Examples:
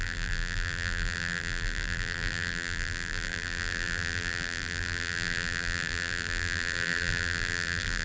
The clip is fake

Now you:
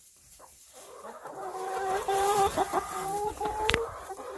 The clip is fake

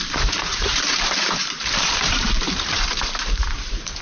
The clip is fake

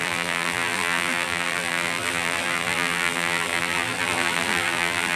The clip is fake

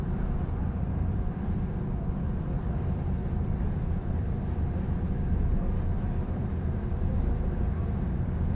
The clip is fake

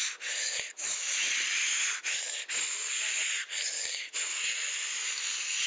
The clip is real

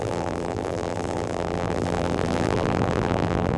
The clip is fake